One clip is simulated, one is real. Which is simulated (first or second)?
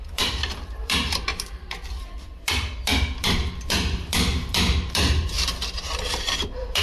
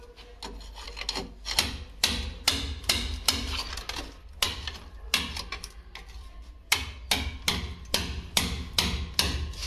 first